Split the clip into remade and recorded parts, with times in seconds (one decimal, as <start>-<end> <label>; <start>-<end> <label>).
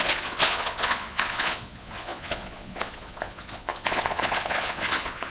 0.0-5.3 remade